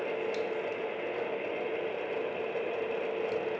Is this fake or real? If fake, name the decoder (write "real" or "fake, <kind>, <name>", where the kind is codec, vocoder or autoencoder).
real